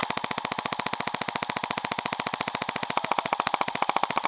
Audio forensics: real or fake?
real